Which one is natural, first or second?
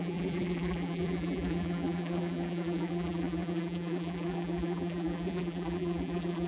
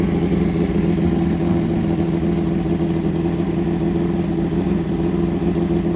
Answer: second